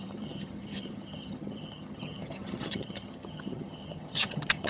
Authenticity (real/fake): fake